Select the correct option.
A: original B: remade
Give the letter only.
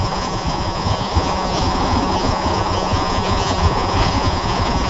B